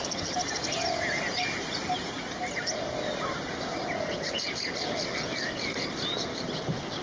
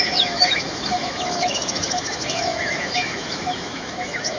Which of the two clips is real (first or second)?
first